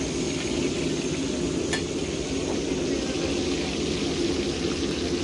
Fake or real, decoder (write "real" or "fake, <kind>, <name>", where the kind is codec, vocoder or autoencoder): real